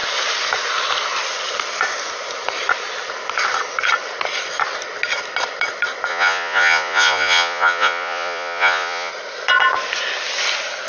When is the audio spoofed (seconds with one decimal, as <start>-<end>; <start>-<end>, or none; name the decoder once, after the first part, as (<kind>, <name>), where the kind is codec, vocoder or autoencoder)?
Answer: 6.1-9.1 (vocoder, Vocos)